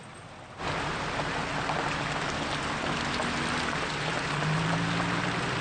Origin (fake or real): real